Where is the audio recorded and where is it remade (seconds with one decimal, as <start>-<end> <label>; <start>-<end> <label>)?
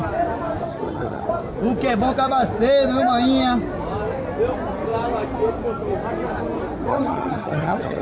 0.0-0.7 recorded; 0.7-1.3 remade; 1.3-6.9 recorded; 6.9-8.0 remade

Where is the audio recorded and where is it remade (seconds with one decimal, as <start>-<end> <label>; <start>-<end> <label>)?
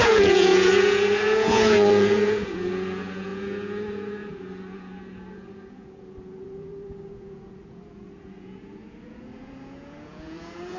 0.0-10.8 remade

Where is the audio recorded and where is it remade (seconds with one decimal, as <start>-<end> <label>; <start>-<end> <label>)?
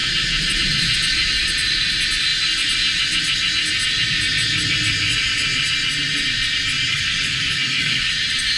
0.0-6.9 recorded; 6.9-8.1 remade; 8.1-8.6 recorded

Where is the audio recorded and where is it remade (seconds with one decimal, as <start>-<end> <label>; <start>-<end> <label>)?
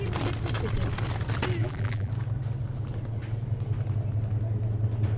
0.0-1.6 recorded; 1.6-2.1 remade; 2.1-5.2 recorded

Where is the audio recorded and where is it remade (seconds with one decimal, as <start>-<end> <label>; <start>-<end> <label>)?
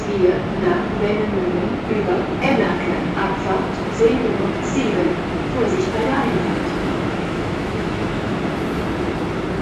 0.0-6.8 recorded; 6.8-8.4 remade; 8.4-9.6 recorded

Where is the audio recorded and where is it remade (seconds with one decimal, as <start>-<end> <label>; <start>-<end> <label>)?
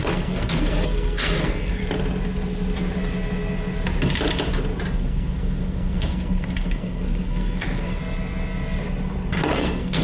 0.0-1.8 remade; 1.8-5.0 recorded; 5.0-8.0 remade; 8.0-9.3 recorded; 9.3-10.0 remade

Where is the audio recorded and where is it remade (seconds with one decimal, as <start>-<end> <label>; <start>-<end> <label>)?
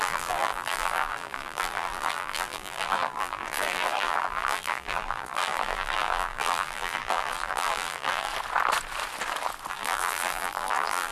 0.0-8.3 remade; 8.3-9.7 recorded; 9.7-11.1 remade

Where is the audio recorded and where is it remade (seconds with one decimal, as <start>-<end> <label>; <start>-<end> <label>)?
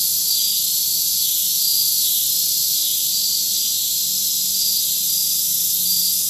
0.0-1.2 recorded; 1.2-2.1 remade; 2.1-6.3 recorded